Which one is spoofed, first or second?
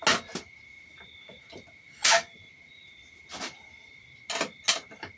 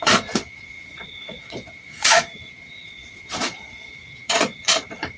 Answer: second